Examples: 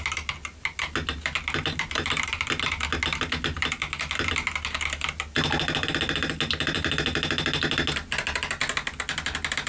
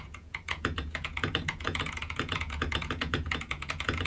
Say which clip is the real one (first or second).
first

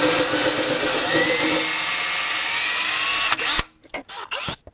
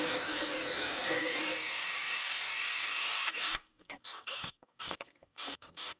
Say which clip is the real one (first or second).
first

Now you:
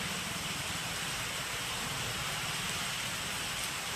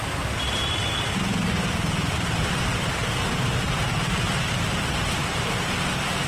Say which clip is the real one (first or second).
first